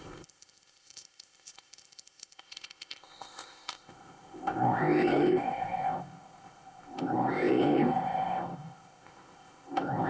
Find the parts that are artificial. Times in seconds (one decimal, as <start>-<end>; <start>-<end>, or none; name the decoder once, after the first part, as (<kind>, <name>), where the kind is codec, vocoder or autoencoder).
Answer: 0.0-10.1 (codec, ZipCodec)